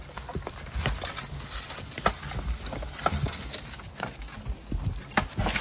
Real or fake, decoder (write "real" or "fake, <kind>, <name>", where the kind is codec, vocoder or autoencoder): real